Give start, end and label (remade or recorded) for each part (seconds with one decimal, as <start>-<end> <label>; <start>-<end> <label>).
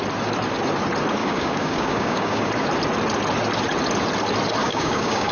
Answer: 0.0-1.2 recorded; 1.2-2.5 remade; 2.5-4.6 recorded; 4.6-5.3 remade